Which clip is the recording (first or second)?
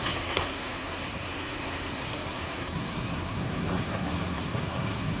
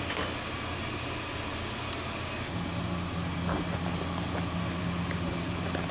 second